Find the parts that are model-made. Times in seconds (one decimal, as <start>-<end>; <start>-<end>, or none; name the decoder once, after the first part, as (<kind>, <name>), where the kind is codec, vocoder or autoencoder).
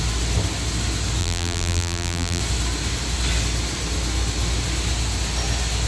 1.2-2.4 (vocoder, BigVGAN v2)